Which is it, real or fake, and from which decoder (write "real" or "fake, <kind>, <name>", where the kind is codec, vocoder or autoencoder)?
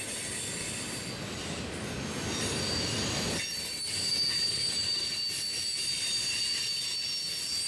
real